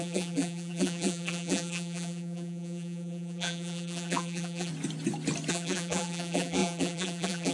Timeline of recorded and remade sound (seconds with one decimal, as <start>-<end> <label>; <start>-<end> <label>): 0.0-4.7 remade; 4.7-5.5 recorded; 5.5-7.5 remade